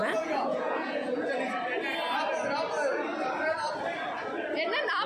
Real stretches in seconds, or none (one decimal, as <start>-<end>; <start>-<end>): 1.3-5.1